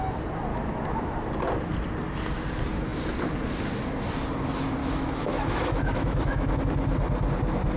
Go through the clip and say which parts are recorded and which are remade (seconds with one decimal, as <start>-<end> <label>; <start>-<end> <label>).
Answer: 0.0-0.5 recorded; 0.5-1.3 remade; 1.3-4.8 recorded; 4.8-6.6 remade; 6.6-7.8 recorded